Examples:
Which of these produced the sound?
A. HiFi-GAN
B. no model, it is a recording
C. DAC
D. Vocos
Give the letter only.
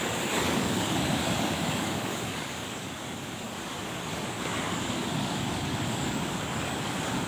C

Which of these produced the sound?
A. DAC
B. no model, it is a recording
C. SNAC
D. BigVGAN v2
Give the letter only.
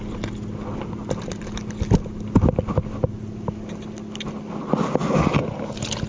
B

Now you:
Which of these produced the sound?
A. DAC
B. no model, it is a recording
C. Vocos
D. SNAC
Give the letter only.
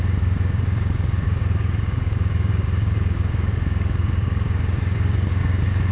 A